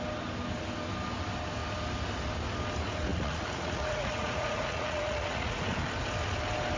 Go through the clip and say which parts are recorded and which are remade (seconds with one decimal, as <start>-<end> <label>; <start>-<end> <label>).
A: 0.0-3.1 recorded; 3.1-5.6 remade; 5.6-6.8 recorded